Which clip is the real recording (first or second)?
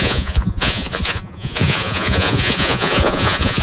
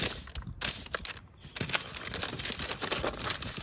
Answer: second